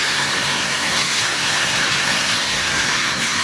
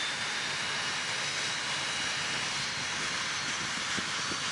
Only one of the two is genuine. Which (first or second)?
second